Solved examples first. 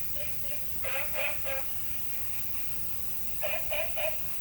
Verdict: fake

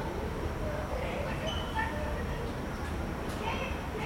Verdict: fake